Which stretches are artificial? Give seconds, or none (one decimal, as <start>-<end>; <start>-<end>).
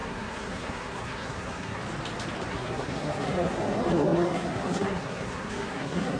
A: 0.0-1.8; 2.5-6.2